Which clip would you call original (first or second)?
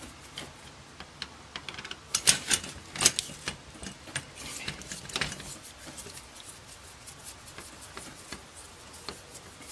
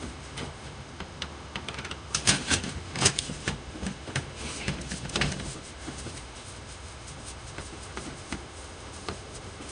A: first